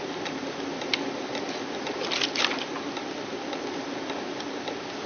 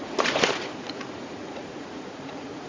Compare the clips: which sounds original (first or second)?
first